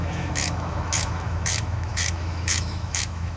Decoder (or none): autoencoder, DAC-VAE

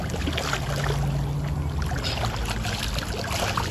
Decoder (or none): none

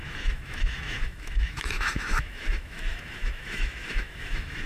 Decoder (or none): autoencoder, DAC-VAE